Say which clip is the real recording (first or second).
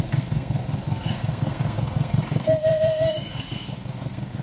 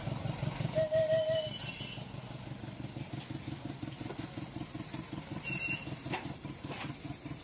second